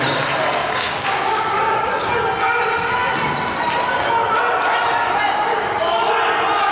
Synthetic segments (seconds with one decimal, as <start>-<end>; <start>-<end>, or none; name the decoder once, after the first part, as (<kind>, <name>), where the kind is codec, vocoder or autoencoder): 0.6-2.1 (codec, DAC); 5.5-6.1